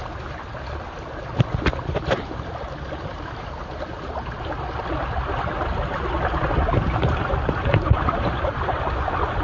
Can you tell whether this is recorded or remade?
recorded